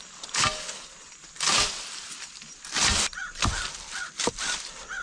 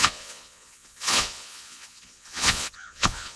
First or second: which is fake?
second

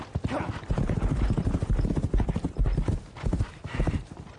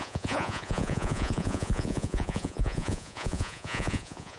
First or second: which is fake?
second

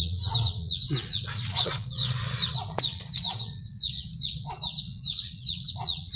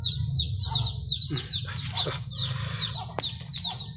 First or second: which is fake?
first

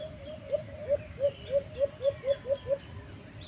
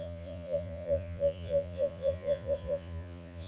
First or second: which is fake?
second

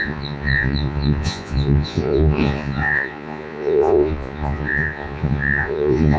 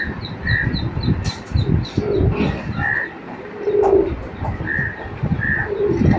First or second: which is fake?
first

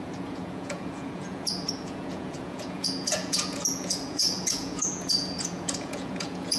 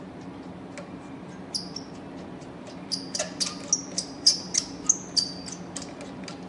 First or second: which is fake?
first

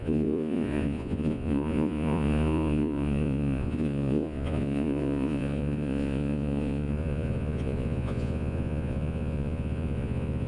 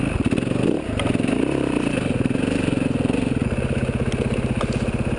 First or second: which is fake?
first